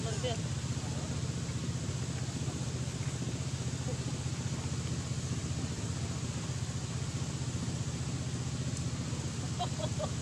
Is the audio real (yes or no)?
yes